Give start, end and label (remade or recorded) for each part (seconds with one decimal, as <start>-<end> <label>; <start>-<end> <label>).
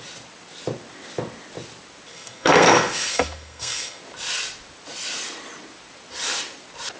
0.0-2.1 recorded; 2.1-4.0 remade; 4.0-7.0 recorded